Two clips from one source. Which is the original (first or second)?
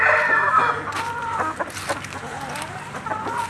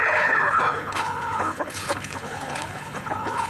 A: first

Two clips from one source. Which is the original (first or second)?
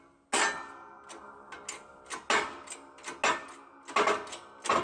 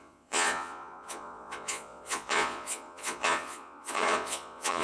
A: first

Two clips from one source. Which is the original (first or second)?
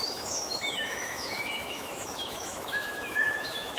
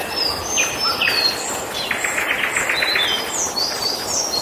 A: second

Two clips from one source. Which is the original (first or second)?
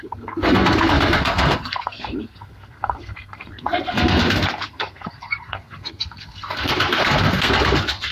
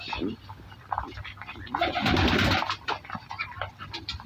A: second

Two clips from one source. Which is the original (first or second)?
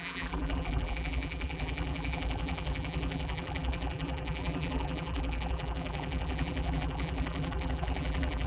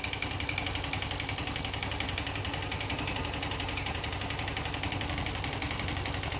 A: second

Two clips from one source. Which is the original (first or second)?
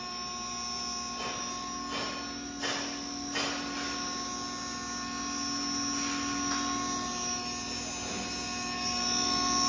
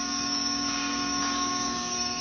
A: first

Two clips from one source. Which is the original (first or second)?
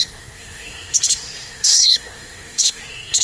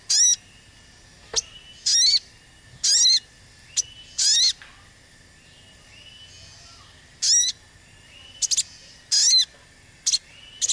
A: second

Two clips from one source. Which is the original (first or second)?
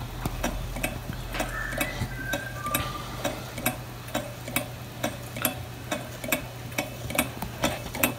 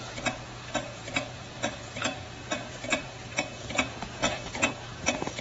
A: first